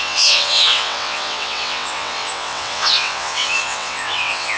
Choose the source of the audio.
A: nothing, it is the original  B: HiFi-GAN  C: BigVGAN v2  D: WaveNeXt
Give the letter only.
D